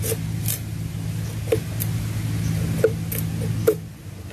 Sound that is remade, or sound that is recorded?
recorded